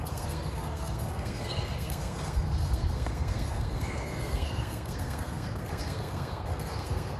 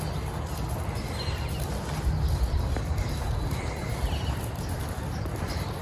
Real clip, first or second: second